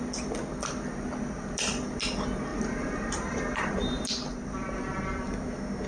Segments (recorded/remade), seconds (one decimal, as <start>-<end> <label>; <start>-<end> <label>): 0.0-2.5 recorded; 2.5-4.1 remade; 4.1-5.9 recorded